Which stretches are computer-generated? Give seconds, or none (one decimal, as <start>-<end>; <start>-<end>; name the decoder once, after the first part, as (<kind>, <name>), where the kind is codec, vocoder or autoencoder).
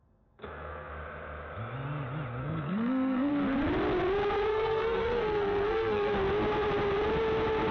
0.0-0.9 (codec, SNAC); 2.4-3.3; 4.5-6.1